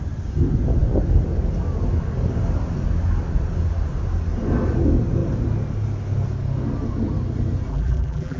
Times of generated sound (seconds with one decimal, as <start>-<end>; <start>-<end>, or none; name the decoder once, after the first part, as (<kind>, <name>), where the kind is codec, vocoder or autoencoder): 7.7-8.4 (vocoder, BigVGAN v2)